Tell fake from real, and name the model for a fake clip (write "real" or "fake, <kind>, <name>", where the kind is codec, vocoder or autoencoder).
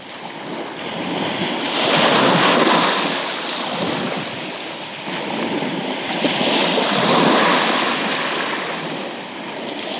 real